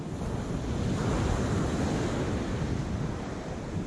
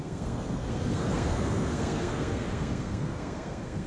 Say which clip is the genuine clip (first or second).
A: first